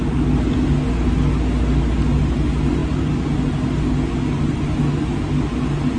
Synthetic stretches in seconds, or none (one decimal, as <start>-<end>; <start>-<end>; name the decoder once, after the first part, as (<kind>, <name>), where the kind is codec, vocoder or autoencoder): 2.8-3.5 (vocoder, BigVGAN v2)